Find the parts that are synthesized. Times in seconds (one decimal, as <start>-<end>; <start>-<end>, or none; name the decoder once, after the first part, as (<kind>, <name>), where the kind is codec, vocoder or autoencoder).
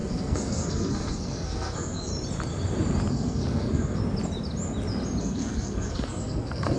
0.0-2.1 (codec, SNAC); 3.1-4.0; 5.2-6.8